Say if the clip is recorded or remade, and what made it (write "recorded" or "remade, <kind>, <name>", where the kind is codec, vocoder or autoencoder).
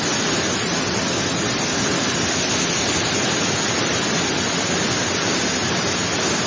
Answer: recorded